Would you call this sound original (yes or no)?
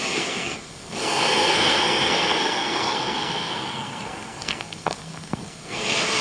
no